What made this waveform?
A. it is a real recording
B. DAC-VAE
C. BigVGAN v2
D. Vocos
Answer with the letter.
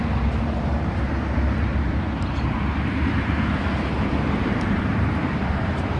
C